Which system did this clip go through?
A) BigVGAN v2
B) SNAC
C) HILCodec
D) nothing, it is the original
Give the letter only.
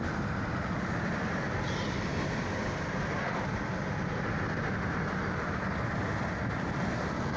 D